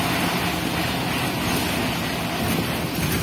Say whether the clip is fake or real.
real